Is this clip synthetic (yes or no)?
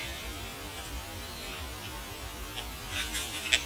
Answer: no